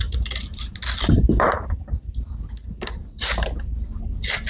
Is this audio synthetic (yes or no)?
no